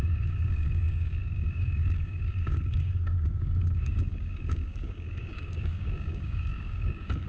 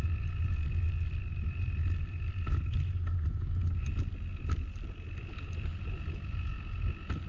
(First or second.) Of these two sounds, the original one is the second